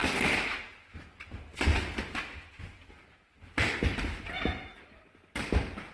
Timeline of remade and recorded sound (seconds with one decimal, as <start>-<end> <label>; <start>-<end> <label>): 0.0-0.6 remade; 0.6-5.9 recorded